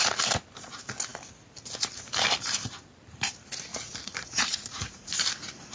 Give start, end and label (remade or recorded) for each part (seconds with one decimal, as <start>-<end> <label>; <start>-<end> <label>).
0.0-3.7 recorded; 3.7-5.2 remade; 5.2-5.7 recorded

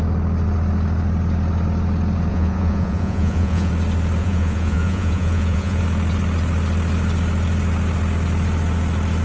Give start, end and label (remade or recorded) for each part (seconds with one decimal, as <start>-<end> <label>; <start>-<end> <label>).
0.0-2.3 recorded; 2.3-3.7 remade; 3.7-4.2 recorded; 4.2-5.8 remade; 5.8-9.2 recorded

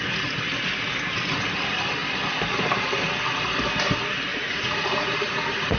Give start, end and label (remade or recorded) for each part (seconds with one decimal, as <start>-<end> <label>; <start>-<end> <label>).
0.0-4.3 recorded; 4.3-5.8 remade

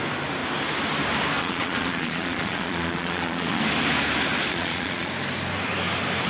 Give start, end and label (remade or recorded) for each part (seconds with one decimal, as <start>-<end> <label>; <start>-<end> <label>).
0.0-1.4 recorded; 1.4-3.6 remade; 3.6-4.5 recorded; 4.5-5.1 remade; 5.1-6.3 recorded

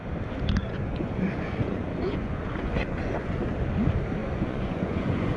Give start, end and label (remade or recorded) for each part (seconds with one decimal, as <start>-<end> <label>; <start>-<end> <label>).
0.0-0.6 recorded; 0.6-3.4 remade; 3.4-4.2 recorded; 4.2-5.4 remade